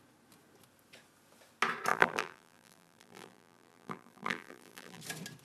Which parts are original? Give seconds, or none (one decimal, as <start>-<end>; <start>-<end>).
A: 0.0-1.9; 5.0-5.4